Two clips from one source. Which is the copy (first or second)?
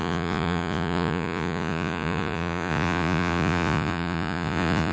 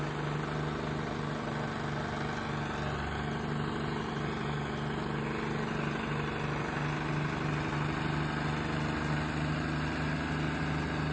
first